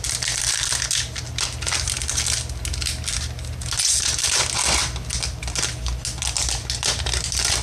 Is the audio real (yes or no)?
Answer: yes